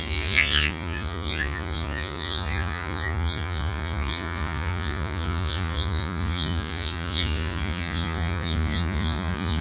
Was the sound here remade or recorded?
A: remade